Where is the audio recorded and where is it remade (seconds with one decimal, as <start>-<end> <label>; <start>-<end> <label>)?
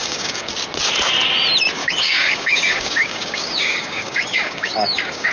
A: 0.0-0.5 remade; 0.5-1.8 recorded; 1.8-5.3 remade